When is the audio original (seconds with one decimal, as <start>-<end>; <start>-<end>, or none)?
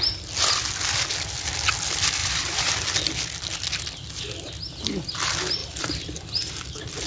0.0-2.2; 2.7-5.6; 6.6-7.1